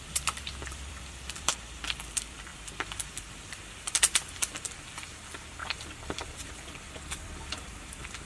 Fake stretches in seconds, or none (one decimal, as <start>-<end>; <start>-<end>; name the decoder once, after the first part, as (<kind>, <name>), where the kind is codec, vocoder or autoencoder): 0.0-8.3 (vocoder, BigVGAN v2)